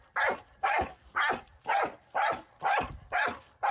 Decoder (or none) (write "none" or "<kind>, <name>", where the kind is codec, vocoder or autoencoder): vocoder, BigVGAN v2